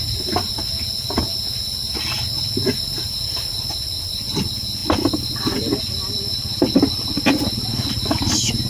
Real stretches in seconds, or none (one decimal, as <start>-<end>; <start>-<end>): 0.0-8.7